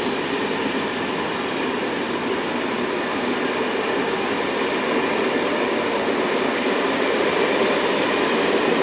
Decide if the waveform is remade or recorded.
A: recorded